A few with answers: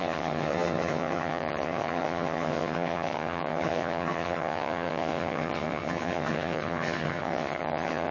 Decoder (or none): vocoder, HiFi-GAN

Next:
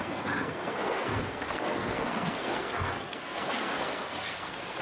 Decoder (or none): codec, SNAC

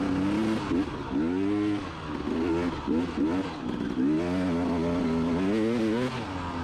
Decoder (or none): none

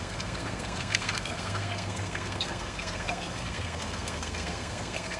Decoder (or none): codec, SNAC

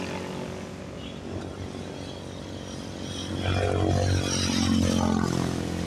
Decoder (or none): none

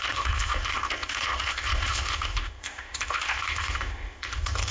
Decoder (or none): codec, ZipCodec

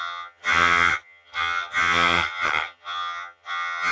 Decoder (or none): vocoder, HiFi-GAN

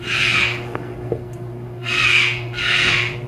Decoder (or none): codec, SNAC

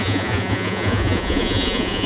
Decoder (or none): vocoder, Vocos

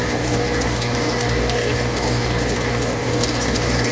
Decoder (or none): codec, DAC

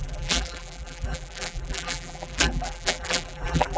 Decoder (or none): vocoder, BigVGAN v2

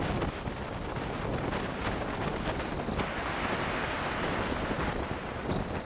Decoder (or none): none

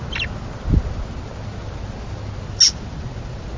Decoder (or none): none